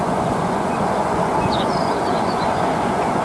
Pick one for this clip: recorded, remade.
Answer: remade